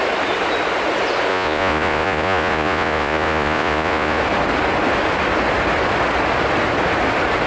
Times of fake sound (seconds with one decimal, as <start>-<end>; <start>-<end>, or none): 1.3-4.2